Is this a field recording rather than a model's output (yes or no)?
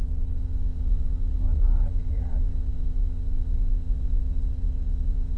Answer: no